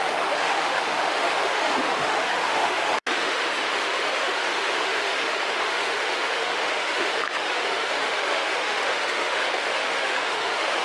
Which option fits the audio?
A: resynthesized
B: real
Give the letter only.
A